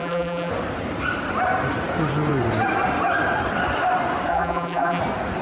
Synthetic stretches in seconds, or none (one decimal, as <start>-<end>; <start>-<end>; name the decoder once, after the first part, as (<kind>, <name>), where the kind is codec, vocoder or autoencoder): 0.0-0.5 (vocoder, BigVGAN v2); 4.3-5.0